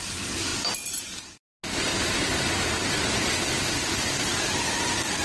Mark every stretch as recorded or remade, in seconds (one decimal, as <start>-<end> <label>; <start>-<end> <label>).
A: 0.0-5.2 recorded